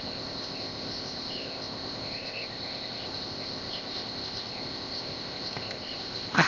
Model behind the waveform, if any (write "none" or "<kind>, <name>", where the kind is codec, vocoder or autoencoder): codec, ZipCodec